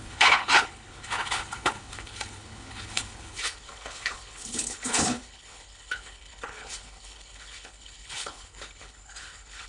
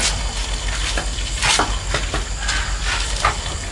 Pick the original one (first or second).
second